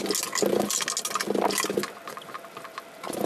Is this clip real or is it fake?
real